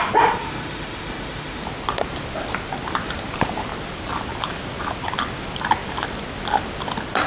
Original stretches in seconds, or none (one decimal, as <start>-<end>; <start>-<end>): 0.0-0.4; 1.6-7.3